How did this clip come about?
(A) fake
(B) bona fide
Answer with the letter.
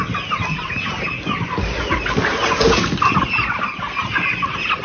B